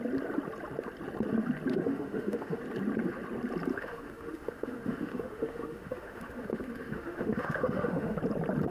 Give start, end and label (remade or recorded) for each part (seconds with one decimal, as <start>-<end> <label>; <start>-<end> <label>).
0.0-1.7 recorded; 1.7-2.6 remade; 2.6-3.7 recorded; 3.7-8.2 remade; 8.2-8.7 recorded